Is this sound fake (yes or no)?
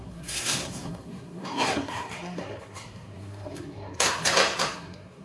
yes